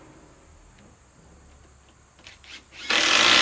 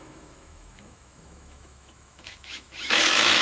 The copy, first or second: second